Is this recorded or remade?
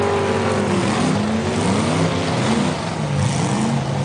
recorded